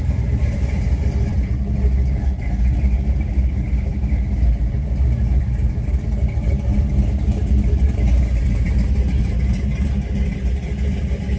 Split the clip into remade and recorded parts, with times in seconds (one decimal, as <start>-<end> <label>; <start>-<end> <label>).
0.0-11.4 remade